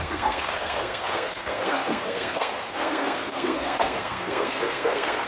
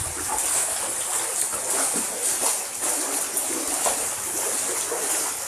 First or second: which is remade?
first